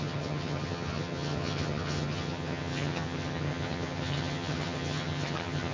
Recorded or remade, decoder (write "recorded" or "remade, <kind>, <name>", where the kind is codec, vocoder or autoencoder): remade, vocoder, HiFi-GAN